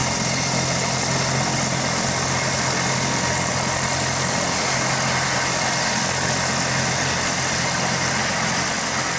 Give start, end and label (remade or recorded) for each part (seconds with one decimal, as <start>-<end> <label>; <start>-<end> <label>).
0.0-9.2 recorded

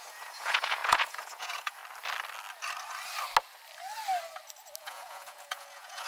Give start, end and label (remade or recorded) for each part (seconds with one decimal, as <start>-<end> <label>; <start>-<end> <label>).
0.0-1.8 remade; 1.8-4.8 recorded; 4.8-6.1 remade

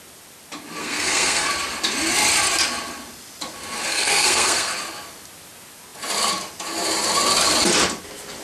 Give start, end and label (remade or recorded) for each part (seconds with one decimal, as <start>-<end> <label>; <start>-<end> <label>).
0.0-0.8 recorded; 0.8-1.5 remade; 1.5-3.9 recorded; 3.9-4.7 remade; 4.7-8.4 recorded